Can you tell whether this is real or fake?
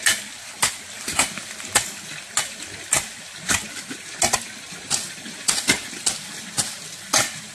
real